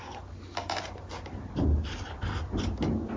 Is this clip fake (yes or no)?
no